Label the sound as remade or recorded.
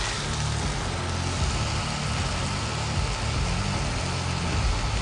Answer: recorded